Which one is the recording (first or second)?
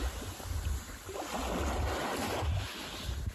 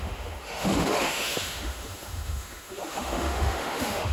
first